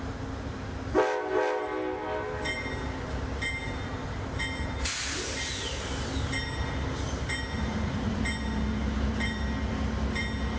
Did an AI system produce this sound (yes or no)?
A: no